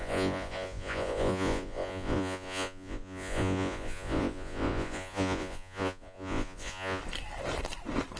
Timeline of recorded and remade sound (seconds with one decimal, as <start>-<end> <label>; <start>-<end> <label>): 0.0-7.0 remade; 7.0-8.2 recorded